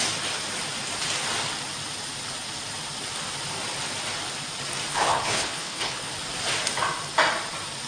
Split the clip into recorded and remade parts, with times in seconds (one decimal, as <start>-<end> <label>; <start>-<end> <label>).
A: 0.0-4.9 recorded; 4.9-6.1 remade; 6.1-7.9 recorded